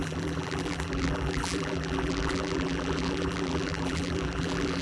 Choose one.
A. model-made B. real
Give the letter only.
A